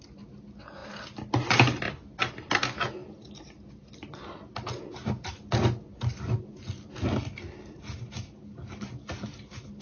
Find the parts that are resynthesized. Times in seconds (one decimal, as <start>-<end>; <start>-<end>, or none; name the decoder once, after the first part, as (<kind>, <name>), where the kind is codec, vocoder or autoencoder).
none